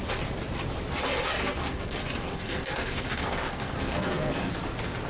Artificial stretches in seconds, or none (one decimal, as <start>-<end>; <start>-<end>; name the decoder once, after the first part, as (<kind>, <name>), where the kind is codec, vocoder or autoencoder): 1.4-4.5 (codec, SNAC)